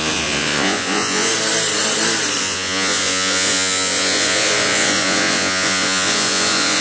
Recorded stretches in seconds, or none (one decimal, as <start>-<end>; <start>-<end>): 1.3-2.4